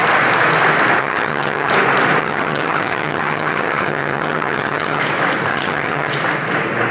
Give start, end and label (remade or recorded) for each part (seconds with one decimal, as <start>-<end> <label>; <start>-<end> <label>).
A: 0.0-1.0 recorded; 1.0-1.7 remade; 1.7-2.2 recorded; 2.2-5.0 remade; 5.0-5.5 recorded; 5.5-6.1 remade; 6.1-6.9 recorded